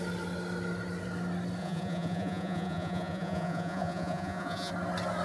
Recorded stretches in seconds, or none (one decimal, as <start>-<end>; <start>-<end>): 0.0-1.6; 4.7-5.2